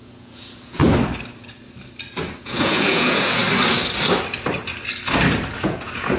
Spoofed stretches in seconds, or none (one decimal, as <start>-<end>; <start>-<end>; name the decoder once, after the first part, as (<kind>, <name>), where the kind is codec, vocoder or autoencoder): 0.0-0.8 (vocoder, Vocos); 2.4-3.4; 5.6-6.2